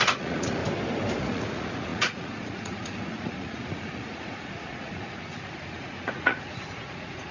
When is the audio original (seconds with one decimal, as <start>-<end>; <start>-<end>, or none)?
0.6-1.2